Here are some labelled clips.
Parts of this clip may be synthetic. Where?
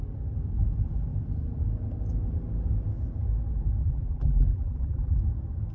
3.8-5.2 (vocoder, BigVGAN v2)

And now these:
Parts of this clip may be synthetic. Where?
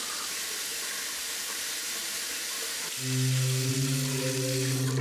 none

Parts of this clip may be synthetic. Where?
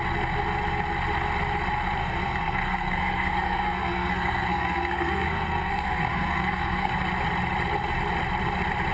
2.0-6.9 (codec, SNAC)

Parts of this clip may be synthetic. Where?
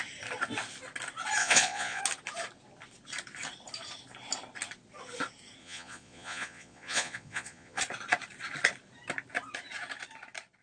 1.4-2.0 (vocoder, Vocos); 5.6-7.8